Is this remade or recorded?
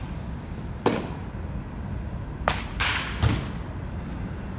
recorded